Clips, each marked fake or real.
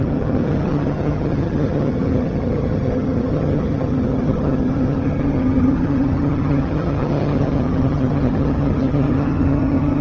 fake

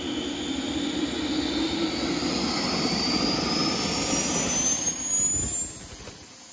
real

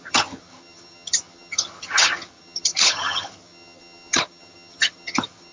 fake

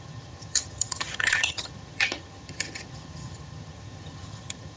fake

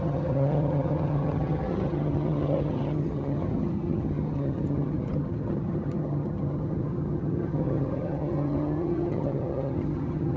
fake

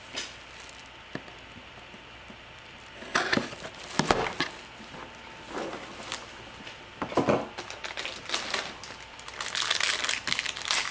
real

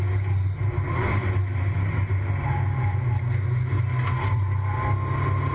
real